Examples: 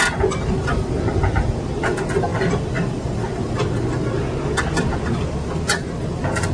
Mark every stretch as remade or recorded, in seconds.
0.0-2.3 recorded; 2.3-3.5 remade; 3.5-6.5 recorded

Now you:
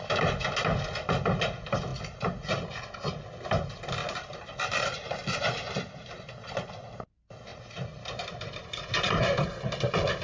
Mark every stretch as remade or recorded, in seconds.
0.0-4.0 recorded; 4.0-6.7 remade; 6.7-7.5 recorded; 7.5-9.5 remade; 9.5-10.2 recorded

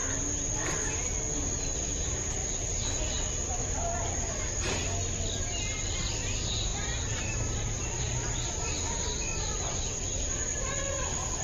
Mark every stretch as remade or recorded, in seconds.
0.0-6.7 recorded; 6.7-10.6 remade; 10.6-11.4 recorded

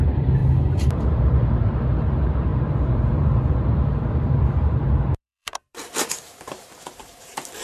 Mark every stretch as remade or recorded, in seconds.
0.0-7.6 remade

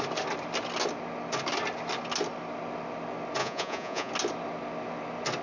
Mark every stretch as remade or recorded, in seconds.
0.0-3.4 recorded; 3.4-4.1 remade; 4.1-5.4 recorded

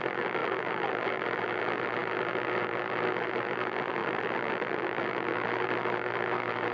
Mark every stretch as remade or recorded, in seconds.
0.0-6.7 remade

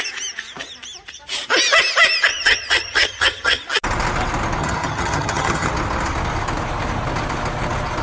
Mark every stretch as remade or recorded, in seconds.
0.0-2.3 recorded; 2.3-3.6 remade; 3.6-4.6 recorded; 4.6-5.7 remade; 5.7-8.0 recorded